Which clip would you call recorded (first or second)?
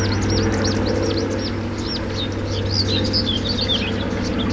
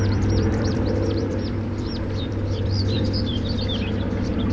first